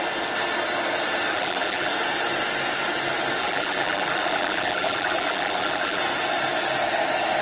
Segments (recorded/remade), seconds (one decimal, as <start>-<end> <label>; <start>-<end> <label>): 0.0-1.3 recorded; 1.3-1.9 remade; 1.9-3.4 recorded; 3.4-6.0 remade; 6.0-7.4 recorded